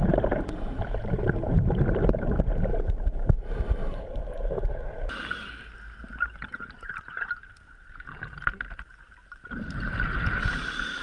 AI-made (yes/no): yes